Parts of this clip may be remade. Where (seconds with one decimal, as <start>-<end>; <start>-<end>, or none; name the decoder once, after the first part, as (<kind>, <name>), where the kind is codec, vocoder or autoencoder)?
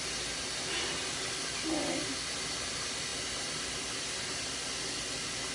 none